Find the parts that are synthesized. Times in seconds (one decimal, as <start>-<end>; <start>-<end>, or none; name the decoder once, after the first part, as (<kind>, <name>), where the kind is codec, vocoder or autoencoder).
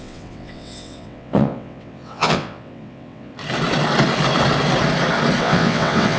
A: 0.0-3.3 (vocoder, WaveNeXt); 5.4-6.2